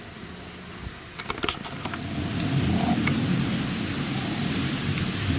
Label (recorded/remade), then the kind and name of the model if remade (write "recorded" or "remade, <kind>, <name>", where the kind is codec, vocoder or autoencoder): recorded